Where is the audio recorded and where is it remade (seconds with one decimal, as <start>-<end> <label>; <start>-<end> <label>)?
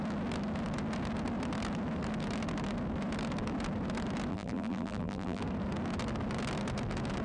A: 0.0-4.3 recorded; 4.3-5.4 remade; 5.4-7.2 recorded